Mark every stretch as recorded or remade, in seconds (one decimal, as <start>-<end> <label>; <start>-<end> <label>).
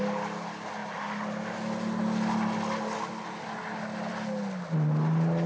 0.0-5.5 recorded